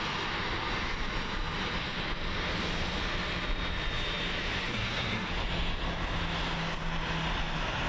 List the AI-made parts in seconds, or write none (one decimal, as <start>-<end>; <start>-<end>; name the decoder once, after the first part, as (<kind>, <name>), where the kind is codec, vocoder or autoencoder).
4.6-5.3 (codec, SNAC)